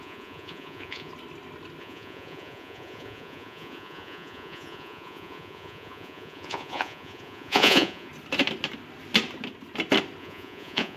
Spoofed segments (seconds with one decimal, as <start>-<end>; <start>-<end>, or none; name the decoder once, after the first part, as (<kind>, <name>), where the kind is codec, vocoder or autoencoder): 0.0-1.1 (vocoder, Vocos); 1.8-8.1; 10.2-11.0